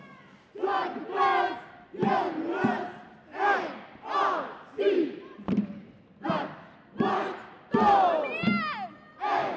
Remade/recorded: recorded